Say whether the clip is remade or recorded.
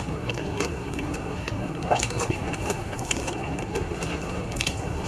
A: remade